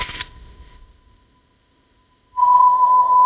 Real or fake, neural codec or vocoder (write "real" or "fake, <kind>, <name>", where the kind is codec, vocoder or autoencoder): fake, codec, ZipCodec